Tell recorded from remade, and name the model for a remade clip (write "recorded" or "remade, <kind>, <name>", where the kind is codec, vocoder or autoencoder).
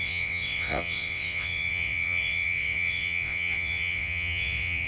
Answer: remade, vocoder, WaveNeXt